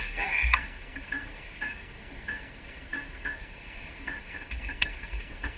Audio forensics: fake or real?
fake